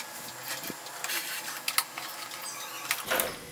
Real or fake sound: real